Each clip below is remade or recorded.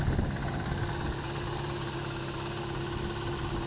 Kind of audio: recorded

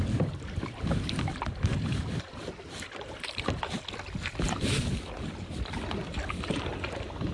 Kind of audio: recorded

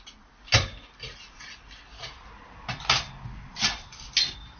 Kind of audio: recorded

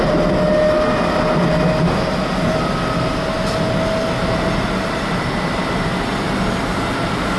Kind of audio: recorded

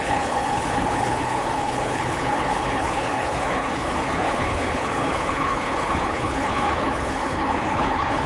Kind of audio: remade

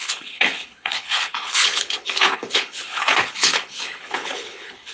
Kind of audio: remade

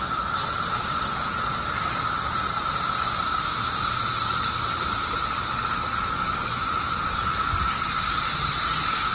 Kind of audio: recorded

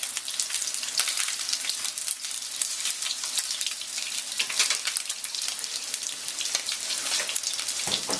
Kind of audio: recorded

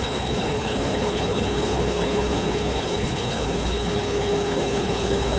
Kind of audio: remade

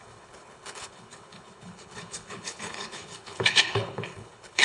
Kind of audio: remade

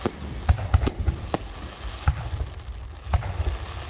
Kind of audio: recorded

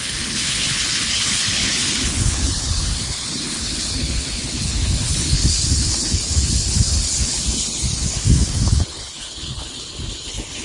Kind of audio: remade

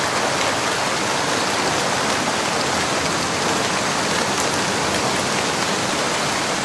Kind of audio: recorded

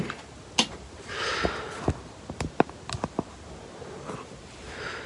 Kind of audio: recorded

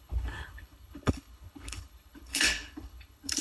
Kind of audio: remade